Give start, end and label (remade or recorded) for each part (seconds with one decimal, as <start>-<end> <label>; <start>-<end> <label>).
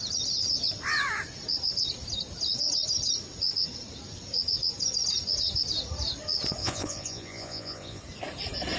0.0-6.6 recorded; 6.6-8.0 remade; 8.0-8.8 recorded